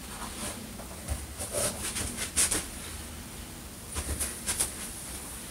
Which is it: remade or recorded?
recorded